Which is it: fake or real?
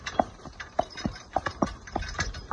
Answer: fake